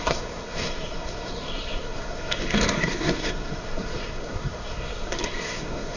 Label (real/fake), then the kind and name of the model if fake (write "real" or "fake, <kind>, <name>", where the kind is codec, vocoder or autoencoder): fake, codec, SNAC